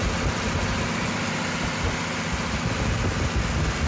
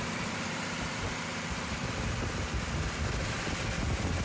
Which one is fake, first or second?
second